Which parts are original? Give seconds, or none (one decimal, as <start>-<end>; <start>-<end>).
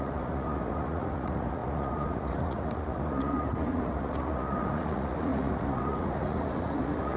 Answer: none